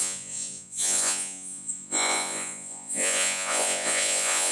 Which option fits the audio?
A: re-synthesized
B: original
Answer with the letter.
A